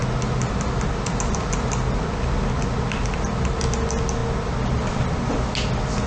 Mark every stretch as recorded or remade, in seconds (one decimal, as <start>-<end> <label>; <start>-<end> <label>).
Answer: 0.0-6.1 recorded